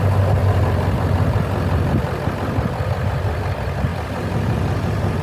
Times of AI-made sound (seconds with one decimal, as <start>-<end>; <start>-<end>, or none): 0.4-2.3